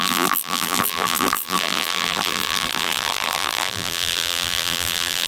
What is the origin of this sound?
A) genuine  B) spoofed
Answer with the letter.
B